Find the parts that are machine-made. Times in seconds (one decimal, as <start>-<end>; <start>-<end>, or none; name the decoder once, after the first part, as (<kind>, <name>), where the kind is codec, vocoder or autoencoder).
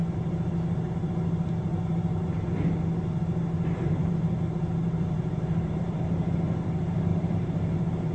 0.0-1.1 (vocoder, BigVGAN v2); 1.7-2.5; 4.0-6.4; 7.1-8.1